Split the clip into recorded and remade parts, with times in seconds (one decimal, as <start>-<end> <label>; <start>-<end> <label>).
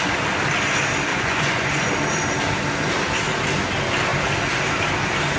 0.0-1.1 recorded; 1.1-1.9 remade; 1.9-5.4 recorded